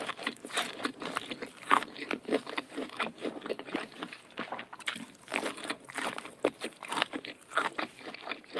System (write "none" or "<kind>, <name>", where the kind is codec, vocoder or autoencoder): vocoder, BigVGAN v2